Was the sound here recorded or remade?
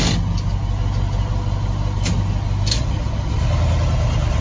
recorded